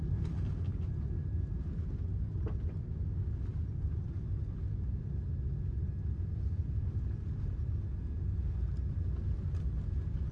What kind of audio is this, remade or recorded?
recorded